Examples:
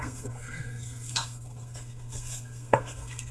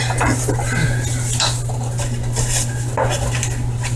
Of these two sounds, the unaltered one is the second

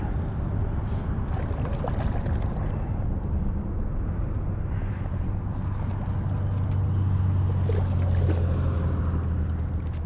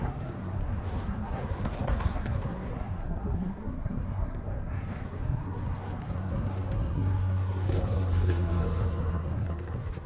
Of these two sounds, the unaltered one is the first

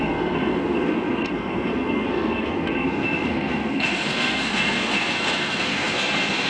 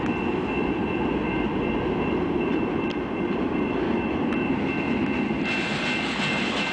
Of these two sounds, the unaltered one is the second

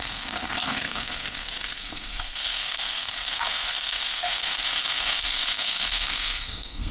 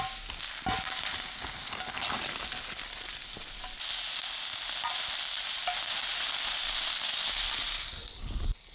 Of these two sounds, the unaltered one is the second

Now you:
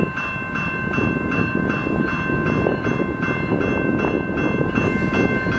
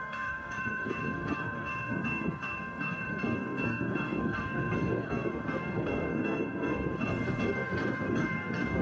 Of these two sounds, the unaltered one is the first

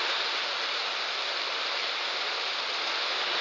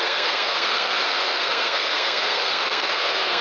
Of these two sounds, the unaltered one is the first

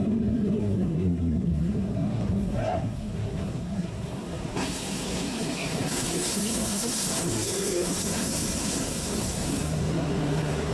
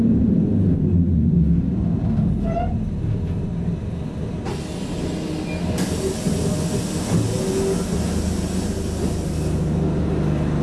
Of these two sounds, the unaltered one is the second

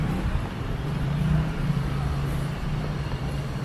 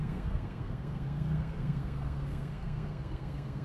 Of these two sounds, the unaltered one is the first